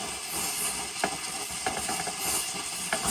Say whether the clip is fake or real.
real